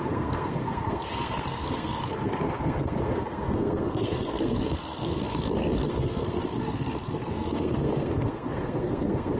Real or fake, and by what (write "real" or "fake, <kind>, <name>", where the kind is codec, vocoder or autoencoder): fake, codec, SNAC